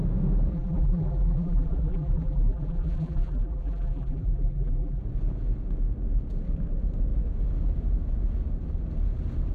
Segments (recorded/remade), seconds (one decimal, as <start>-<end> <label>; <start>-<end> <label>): 0.0-0.5 recorded; 0.5-5.0 remade; 5.0-9.5 recorded